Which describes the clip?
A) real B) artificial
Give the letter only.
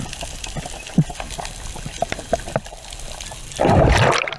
A